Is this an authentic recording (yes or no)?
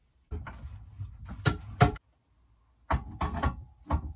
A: yes